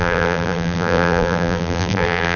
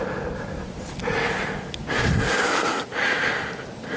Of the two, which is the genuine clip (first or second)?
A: second